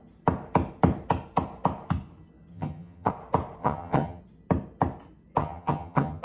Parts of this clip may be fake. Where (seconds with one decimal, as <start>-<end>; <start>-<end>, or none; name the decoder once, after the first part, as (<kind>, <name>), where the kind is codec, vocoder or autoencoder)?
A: 2.5-3.1 (vocoder, HiFi-GAN); 3.6-4.2; 5.4-6.2